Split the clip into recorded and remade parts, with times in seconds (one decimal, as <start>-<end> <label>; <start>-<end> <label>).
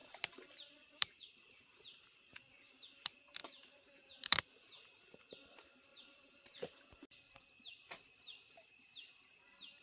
0.0-2.0 remade; 2.0-3.4 recorded; 3.4-4.4 remade; 4.4-5.9 recorded; 5.9-6.8 remade; 6.8-9.8 recorded